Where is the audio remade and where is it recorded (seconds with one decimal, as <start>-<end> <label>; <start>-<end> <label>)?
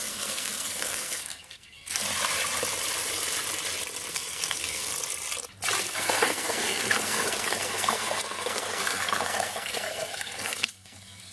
0.0-2.0 remade; 2.0-4.1 recorded; 4.1-4.9 remade; 4.9-5.8 recorded; 5.8-11.3 remade